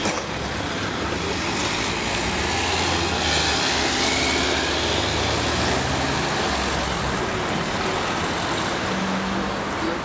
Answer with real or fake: real